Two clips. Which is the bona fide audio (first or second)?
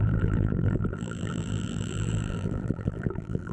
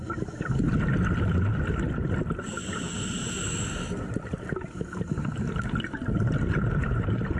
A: second